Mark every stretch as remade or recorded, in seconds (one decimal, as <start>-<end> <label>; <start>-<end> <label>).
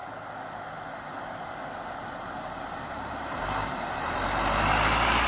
0.0-5.3 recorded